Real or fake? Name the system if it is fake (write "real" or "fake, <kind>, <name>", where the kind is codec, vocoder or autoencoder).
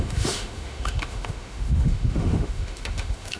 fake, autoencoder, DAC-VAE